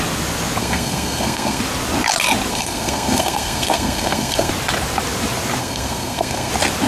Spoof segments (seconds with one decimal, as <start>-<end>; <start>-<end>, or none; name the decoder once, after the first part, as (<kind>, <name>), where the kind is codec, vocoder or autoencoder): 0.6-1.6 (codec, SNAC); 2.5-4.5; 5.6-6.5